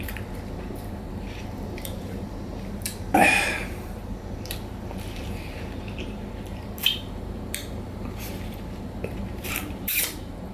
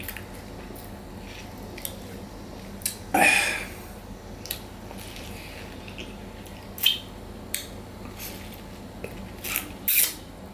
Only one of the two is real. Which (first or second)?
second